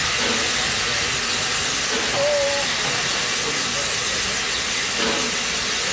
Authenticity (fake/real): real